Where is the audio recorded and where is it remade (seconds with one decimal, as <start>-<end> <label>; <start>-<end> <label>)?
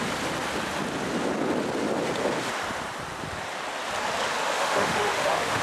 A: 0.0-4.4 recorded; 4.4-5.6 remade